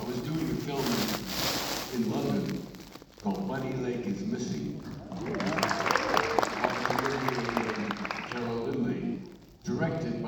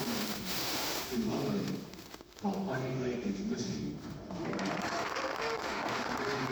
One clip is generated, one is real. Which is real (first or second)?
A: first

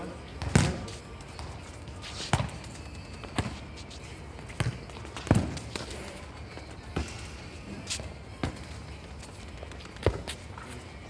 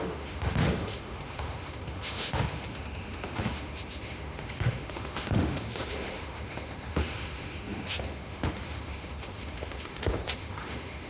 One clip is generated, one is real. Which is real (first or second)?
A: first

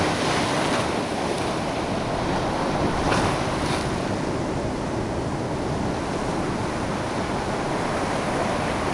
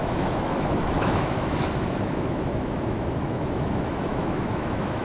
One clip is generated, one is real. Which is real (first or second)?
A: first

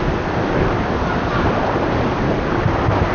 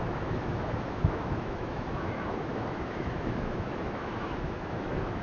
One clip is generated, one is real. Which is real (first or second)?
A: first